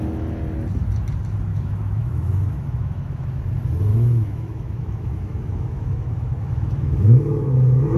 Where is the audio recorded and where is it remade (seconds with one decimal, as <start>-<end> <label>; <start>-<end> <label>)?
0.0-1.5 recorded; 1.5-3.4 remade; 3.4-3.9 recorded; 3.9-8.0 remade